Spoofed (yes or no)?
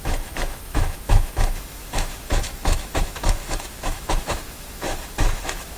yes